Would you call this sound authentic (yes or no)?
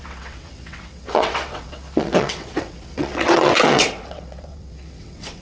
no